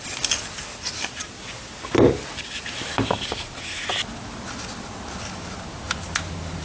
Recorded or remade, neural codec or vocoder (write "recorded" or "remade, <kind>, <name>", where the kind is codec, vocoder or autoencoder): recorded